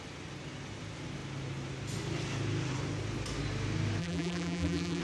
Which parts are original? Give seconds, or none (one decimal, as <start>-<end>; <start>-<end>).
0.0-4.0